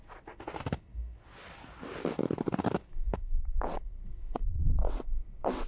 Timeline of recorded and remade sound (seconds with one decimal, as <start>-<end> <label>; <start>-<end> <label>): 0.0-3.4 recorded; 3.4-5.7 remade